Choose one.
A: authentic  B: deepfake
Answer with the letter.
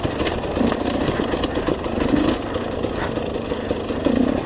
A